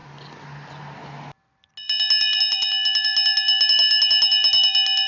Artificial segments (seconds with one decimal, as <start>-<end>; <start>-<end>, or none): none